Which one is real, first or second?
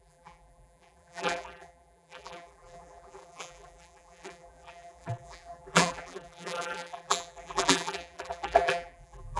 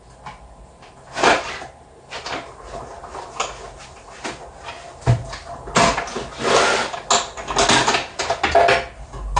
second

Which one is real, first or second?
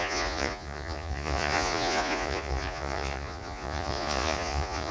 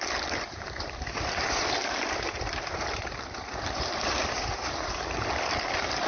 second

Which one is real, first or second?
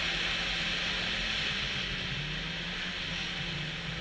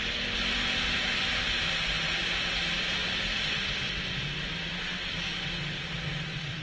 first